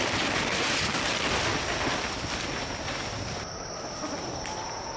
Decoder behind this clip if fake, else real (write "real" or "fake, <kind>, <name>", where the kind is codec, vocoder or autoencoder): real